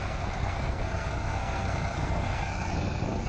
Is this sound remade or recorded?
remade